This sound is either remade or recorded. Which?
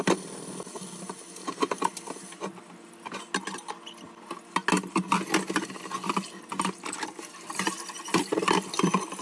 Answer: recorded